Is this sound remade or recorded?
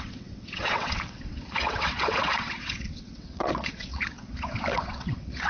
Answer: remade